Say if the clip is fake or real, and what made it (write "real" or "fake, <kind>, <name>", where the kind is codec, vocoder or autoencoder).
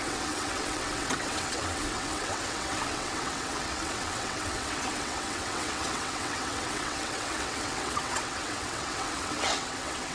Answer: fake, vocoder, WaveNeXt